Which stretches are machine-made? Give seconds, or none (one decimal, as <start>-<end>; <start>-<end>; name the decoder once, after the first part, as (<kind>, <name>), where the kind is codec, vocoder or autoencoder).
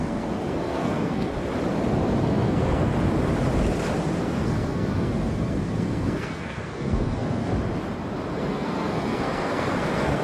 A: 0.0-1.3 (codec, SNAC); 2.2-2.9; 4.2-7.5; 8.3-10.2